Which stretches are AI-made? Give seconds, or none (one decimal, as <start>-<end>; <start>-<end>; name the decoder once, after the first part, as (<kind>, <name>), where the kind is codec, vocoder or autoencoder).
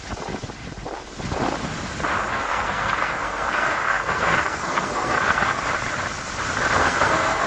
2.3-5.6 (codec, SNAC); 6.8-7.5